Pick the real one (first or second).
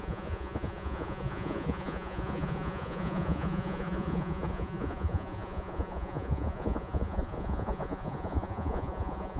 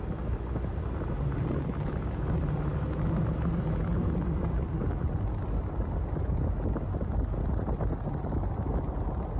second